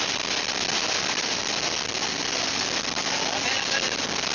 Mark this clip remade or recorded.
recorded